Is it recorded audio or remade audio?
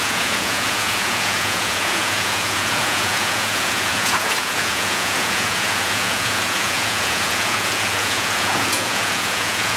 remade